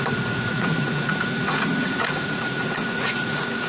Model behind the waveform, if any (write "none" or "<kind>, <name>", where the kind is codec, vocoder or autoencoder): vocoder, Vocos